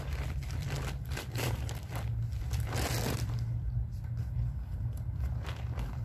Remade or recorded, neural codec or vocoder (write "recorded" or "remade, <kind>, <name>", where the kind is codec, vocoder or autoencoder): remade, vocoder, BigVGAN v2